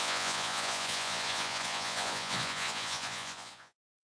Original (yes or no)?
no